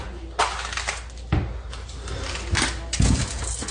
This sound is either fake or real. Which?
real